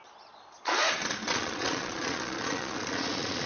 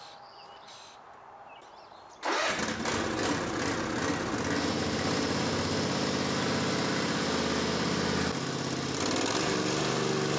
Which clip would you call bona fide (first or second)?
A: second